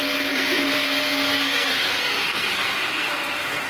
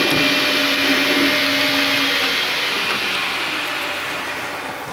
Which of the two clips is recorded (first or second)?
second